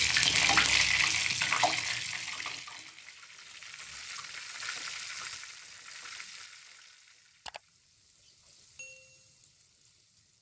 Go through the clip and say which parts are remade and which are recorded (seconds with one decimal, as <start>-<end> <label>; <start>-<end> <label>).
0.0-10.4 recorded